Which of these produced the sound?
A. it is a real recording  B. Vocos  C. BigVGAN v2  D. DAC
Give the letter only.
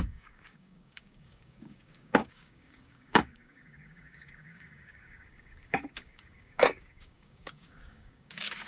D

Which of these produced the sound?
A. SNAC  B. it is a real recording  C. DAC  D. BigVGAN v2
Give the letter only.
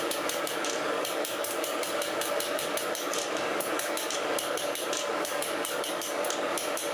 C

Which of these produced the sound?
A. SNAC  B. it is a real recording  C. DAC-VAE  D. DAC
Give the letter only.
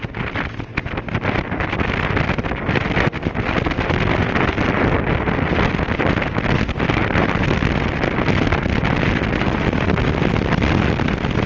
B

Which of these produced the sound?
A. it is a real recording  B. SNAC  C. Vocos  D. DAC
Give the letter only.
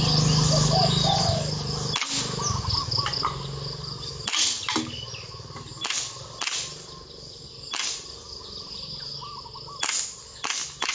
A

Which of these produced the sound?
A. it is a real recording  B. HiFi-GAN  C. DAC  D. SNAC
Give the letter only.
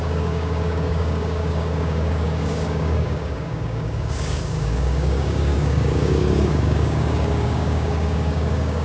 C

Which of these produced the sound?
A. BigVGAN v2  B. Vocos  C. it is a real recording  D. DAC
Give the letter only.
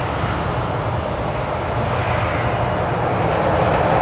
C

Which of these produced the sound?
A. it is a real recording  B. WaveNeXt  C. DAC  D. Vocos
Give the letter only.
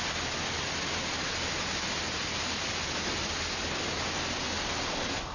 A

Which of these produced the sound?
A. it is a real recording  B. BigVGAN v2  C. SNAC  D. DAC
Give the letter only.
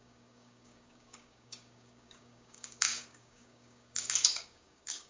D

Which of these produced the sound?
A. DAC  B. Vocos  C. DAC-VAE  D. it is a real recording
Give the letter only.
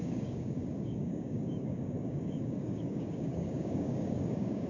A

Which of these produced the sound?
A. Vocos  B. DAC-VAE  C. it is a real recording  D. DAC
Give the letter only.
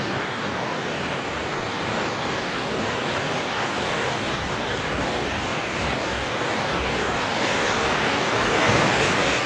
D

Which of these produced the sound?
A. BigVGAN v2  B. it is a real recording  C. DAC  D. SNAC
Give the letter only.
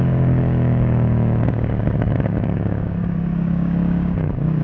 C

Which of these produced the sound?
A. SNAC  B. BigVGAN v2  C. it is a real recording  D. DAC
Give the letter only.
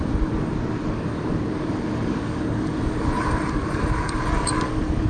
D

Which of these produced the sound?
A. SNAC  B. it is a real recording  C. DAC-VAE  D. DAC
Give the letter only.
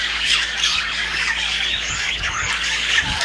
D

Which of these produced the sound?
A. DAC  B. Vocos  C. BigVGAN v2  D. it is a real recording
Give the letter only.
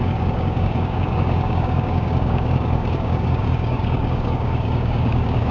A